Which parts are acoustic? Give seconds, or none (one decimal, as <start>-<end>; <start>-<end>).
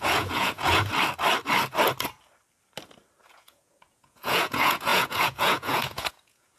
0.9-3.3